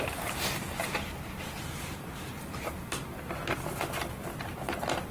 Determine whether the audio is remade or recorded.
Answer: recorded